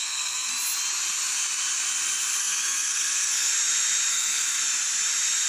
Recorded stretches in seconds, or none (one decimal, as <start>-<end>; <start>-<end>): 0.5-2.4; 3.5-4.1; 4.6-5.5